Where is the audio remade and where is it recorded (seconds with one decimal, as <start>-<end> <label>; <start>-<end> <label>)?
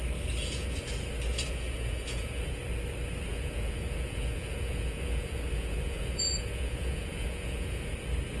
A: 0.0-0.4 recorded; 0.4-0.9 remade; 0.9-1.3 recorded; 1.3-2.6 remade; 2.6-3.3 recorded; 3.3-7.9 remade; 7.9-8.4 recorded